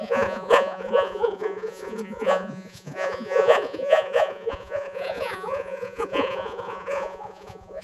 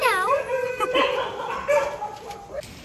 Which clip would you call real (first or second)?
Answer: second